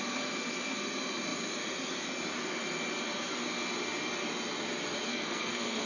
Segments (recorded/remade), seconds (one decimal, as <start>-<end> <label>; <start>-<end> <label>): 0.0-5.1 recorded; 5.1-5.9 remade